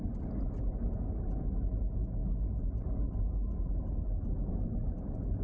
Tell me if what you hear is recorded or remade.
recorded